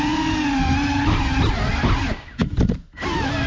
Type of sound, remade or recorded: recorded